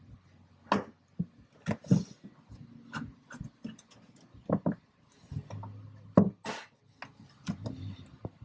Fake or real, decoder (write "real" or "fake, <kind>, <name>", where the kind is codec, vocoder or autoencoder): real